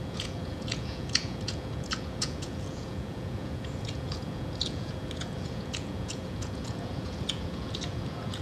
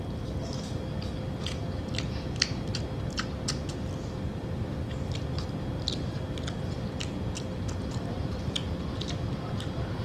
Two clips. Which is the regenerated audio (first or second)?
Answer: first